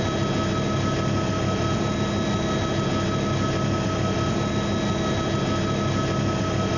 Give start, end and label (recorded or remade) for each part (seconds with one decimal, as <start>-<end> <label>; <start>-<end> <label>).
0.0-6.8 recorded